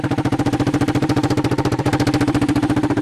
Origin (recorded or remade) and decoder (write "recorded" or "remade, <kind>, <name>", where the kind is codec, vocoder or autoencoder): remade, vocoder, BigVGAN v2